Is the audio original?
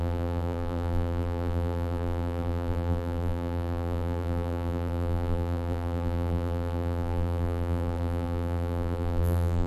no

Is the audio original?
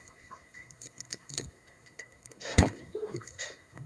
no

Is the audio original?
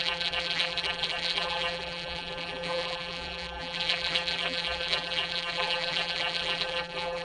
no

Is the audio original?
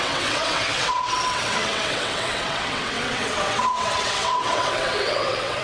no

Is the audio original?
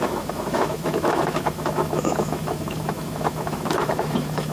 no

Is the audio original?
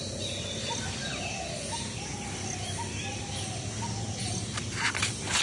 yes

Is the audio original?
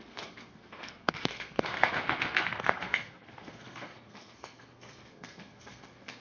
no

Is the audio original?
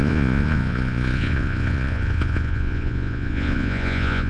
no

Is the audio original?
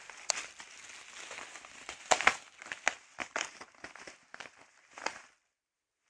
yes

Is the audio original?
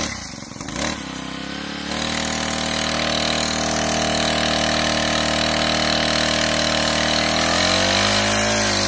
yes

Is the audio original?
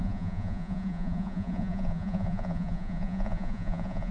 no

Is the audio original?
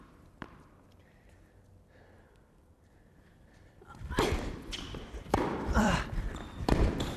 no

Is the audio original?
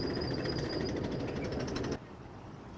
yes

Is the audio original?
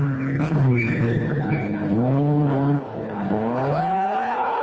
no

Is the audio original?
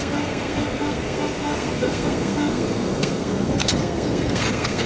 no